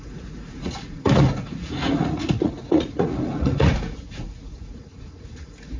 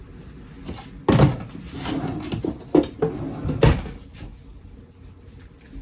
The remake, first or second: first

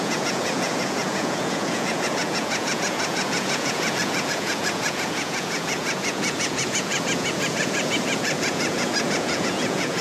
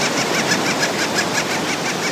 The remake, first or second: first